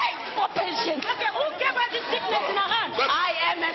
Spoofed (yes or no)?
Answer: yes